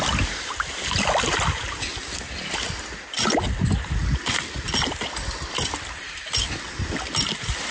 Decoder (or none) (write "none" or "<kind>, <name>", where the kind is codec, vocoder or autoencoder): none